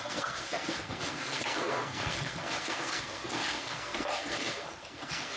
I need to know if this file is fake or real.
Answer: fake